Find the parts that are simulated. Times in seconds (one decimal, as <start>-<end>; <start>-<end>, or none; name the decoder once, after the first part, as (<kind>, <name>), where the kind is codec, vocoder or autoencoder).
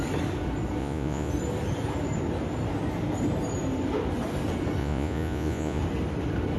0.8-1.3 (vocoder, Vocos); 4.8-5.8